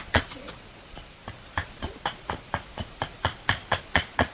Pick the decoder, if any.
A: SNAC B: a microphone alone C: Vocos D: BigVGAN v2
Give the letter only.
C